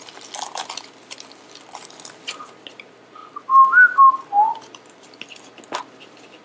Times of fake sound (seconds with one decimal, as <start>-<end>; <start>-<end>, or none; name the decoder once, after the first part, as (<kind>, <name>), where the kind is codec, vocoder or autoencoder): none